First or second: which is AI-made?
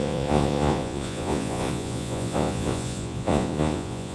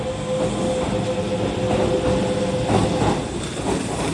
first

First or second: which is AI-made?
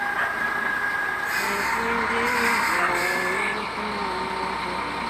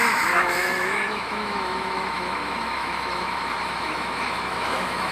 second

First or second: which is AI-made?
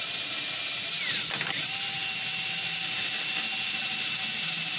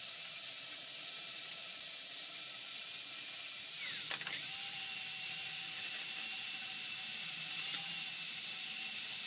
second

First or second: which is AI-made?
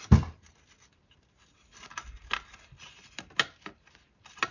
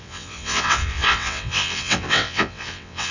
second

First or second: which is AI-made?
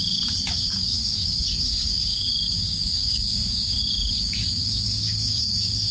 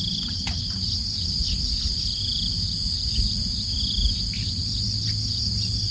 first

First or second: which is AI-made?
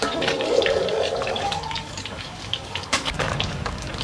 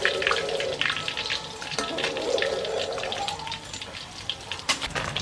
first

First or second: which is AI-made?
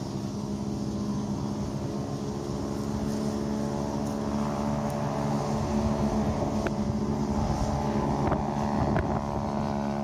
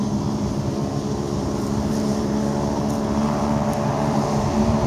second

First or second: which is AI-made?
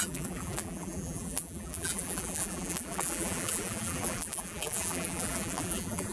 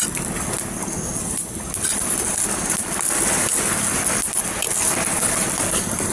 first